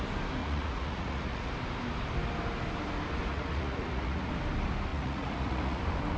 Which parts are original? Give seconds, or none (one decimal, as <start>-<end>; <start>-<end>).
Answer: 0.0-0.4; 1.5-3.3; 4.3-4.9; 5.8-6.2